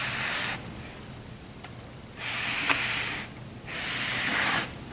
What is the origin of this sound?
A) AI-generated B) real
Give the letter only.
A